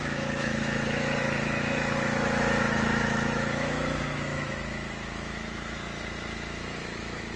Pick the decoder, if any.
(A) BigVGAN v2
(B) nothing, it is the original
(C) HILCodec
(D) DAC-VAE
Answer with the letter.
D